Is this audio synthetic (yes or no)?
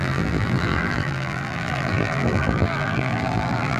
yes